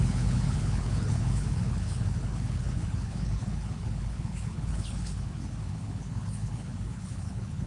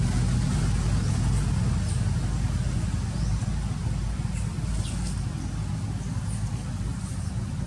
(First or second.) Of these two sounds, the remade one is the first